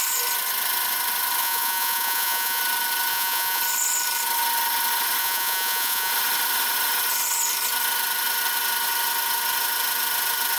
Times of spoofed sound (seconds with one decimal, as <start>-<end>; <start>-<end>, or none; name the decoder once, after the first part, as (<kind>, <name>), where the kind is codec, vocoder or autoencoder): 1.4-2.6 (vocoder, Vocos); 3.1-3.6; 5.2-6.1